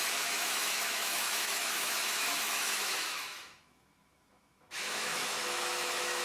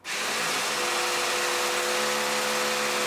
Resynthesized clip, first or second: first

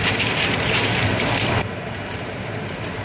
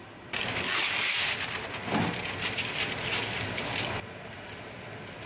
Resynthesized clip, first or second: first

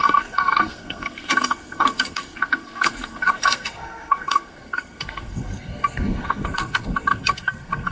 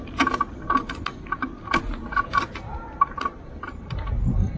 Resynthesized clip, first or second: first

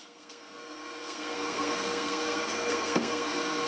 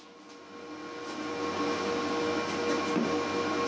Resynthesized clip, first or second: first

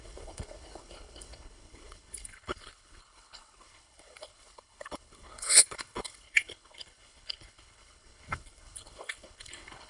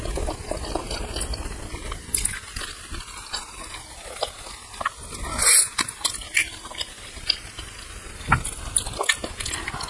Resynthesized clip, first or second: first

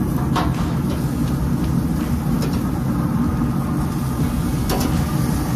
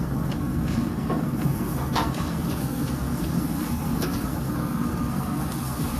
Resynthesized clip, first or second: second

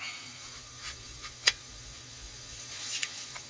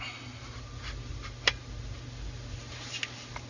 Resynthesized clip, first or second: first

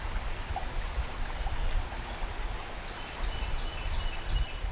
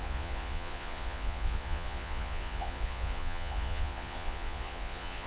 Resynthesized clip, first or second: second